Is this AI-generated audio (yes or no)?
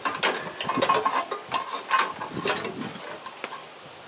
no